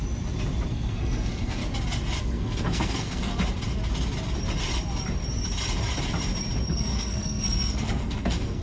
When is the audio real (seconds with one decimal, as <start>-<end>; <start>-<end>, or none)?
0.0-0.7; 1.6-2.2; 3.3-6.7